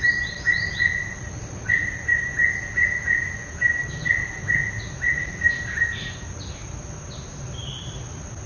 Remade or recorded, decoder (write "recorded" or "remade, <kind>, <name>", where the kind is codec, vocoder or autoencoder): recorded